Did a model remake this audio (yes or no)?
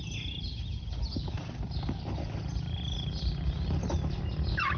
no